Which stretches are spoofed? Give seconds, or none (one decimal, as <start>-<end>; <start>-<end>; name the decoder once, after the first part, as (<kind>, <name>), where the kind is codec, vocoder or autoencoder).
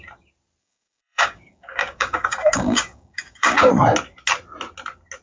0.6-3.7 (codec, DAC)